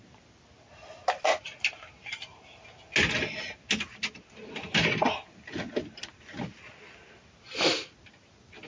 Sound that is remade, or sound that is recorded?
recorded